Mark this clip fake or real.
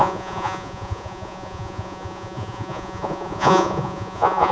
fake